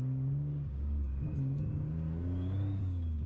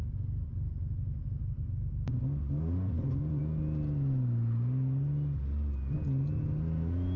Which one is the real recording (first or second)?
second